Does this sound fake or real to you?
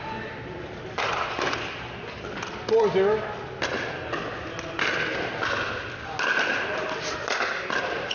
real